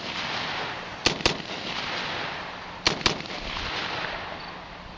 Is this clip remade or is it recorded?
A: recorded